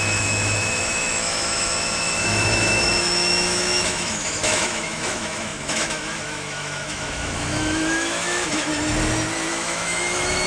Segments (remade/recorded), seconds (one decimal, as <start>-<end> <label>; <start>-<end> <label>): 0.0-8.7 remade; 8.7-9.5 recorded; 9.5-10.5 remade

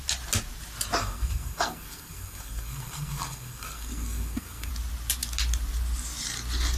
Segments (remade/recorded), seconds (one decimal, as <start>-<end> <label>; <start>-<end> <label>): 0.0-1.0 recorded; 1.0-4.7 remade; 4.7-6.8 recorded

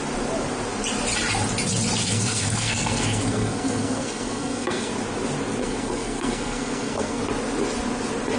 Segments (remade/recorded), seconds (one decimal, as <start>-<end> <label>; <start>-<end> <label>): 0.0-2.0 recorded; 2.0-4.9 remade; 4.9-5.6 recorded; 5.6-7.2 remade; 7.2-8.4 recorded